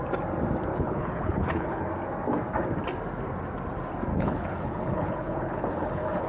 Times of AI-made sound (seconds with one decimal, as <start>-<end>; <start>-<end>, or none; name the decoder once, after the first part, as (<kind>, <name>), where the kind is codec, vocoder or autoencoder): 0.7-1.9 (codec, HILCodec); 4.1-6.3